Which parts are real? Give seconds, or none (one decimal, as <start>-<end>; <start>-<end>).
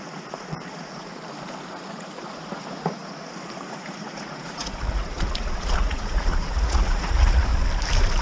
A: 1.1-1.7; 7.5-8.2